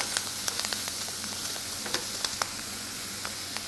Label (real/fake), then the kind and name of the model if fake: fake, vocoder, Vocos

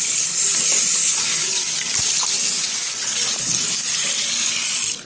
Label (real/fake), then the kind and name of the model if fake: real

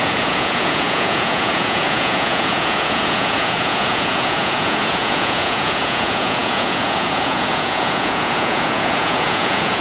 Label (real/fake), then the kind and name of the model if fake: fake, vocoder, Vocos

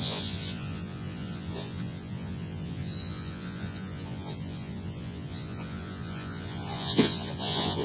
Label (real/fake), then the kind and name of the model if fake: fake, vocoder, Vocos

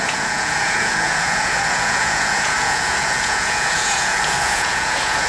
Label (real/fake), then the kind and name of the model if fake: fake, vocoder, Vocos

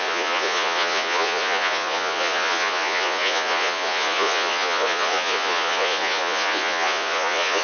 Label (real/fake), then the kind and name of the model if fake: fake, vocoder, Vocos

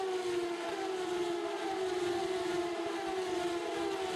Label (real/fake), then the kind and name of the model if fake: real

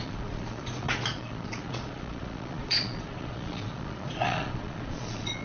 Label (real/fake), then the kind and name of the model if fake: fake, vocoder, Vocos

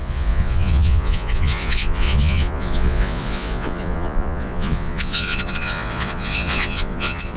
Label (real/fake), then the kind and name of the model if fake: fake, vocoder, Vocos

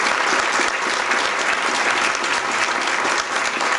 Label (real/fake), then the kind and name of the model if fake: real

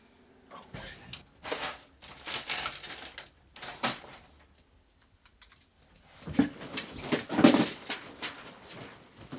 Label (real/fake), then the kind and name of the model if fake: real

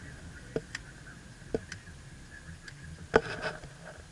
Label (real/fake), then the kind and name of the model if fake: real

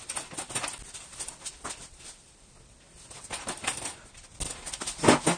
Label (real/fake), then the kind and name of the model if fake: real